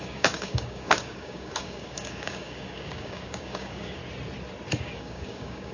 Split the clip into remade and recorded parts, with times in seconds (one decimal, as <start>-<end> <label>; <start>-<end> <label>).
0.0-4.0 remade; 4.0-4.8 recorded; 4.8-5.7 remade